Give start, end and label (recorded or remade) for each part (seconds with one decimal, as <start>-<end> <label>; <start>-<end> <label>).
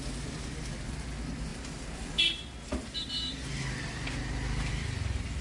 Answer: 0.0-5.4 recorded